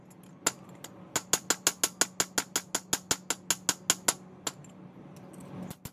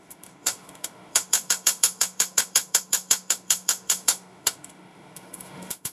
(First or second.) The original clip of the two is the first